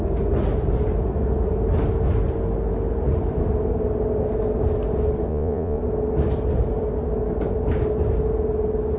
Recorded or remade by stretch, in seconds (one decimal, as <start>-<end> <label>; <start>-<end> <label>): 0.0-5.3 recorded; 5.3-5.8 remade; 5.8-9.0 recorded